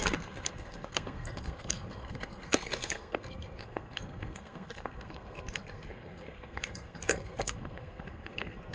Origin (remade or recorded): remade